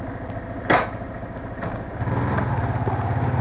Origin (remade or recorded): recorded